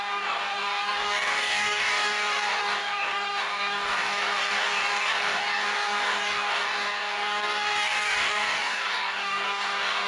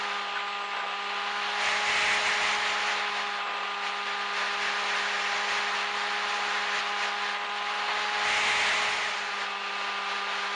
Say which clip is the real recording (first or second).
second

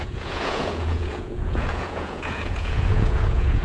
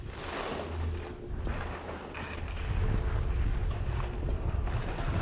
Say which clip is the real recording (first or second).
second